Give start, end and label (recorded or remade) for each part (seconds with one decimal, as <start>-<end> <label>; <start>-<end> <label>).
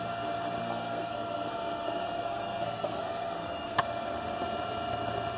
0.0-0.6 recorded; 0.6-3.8 remade; 3.8-5.4 recorded